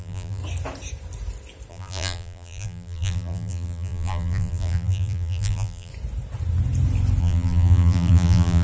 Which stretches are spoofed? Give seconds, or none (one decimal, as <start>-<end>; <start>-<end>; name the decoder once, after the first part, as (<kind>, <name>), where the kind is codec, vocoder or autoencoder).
0.0-0.4 (vocoder, BigVGAN v2); 1.7-5.9; 7.2-8.6